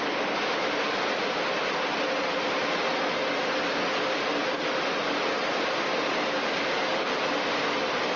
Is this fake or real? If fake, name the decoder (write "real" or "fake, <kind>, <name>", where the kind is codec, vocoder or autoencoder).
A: real